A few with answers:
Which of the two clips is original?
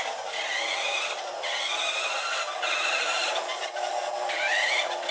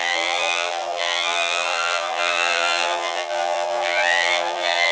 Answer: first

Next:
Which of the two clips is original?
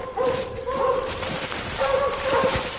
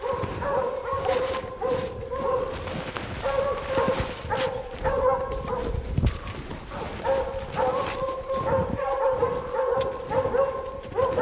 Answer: second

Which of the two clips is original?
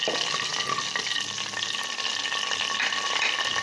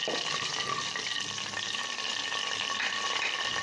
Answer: first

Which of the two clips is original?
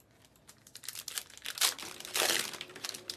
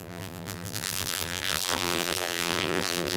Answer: first